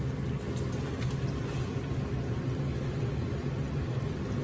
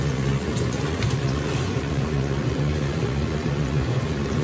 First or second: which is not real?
second